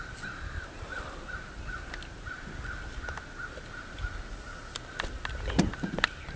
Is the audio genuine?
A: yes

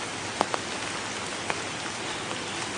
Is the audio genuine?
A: yes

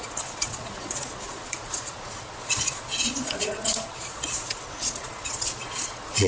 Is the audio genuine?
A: no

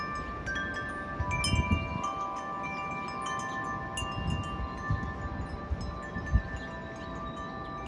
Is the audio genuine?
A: yes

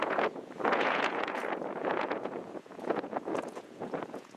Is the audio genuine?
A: no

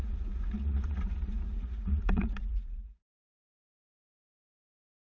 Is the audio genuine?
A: no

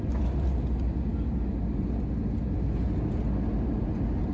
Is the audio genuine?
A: yes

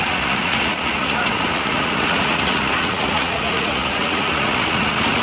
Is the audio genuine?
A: no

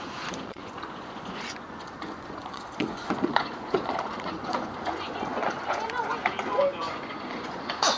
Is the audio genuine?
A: no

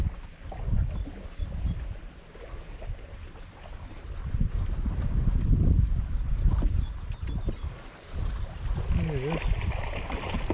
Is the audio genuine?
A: yes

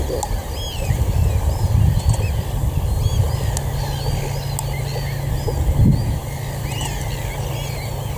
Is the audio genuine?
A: yes